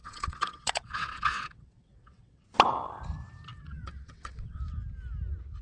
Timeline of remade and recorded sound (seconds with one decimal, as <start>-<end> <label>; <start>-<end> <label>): 0.0-2.4 remade; 2.4-3.5 recorded; 3.5-4.6 remade; 4.6-5.6 recorded